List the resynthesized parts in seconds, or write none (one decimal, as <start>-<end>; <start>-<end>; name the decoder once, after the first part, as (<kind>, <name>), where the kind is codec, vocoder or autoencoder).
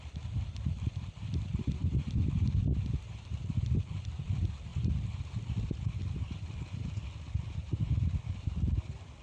0.0-4.7 (vocoder, BigVGAN v2); 5.6-9.2